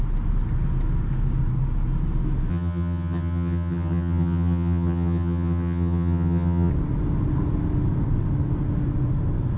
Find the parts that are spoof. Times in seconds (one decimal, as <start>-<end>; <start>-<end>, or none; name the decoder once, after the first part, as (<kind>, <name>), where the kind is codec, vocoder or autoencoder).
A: 2.5-6.7 (vocoder, HiFi-GAN)